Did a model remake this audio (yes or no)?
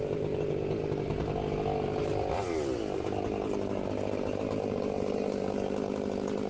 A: no